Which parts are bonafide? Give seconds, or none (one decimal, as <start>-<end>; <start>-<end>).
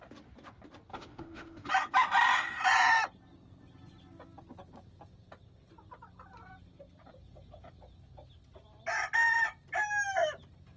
0.0-0.9; 1.7-10.8